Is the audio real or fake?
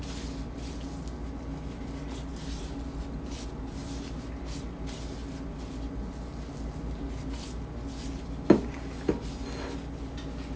real